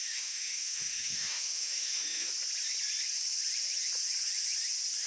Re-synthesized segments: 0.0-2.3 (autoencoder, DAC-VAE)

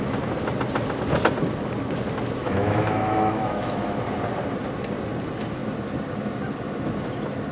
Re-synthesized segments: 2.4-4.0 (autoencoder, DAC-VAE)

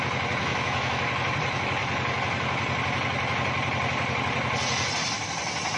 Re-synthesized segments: 0.4-1.1 (autoencoder, DAC-VAE)

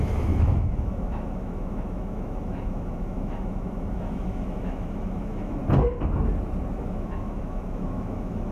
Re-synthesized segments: 0.0-5.6 (autoencoder, DAC-VAE); 6.7-8.5

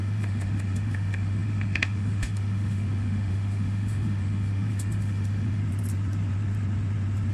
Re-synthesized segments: 0.0-5.6 (autoencoder, DAC-VAE)